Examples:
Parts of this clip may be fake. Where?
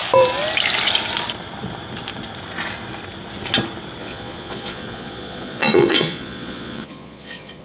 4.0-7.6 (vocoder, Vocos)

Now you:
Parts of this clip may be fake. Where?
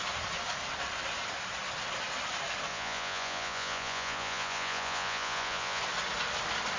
2.7-5.8 (vocoder, Vocos)